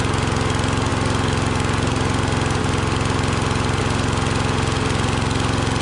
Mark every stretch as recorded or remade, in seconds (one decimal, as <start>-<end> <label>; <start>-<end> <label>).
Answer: 0.0-5.8 recorded